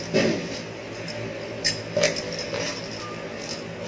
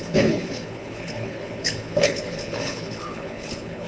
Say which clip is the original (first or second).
first